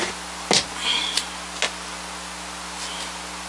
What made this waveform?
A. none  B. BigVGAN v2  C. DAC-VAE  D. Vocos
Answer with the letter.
A